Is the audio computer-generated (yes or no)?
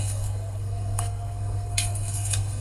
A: yes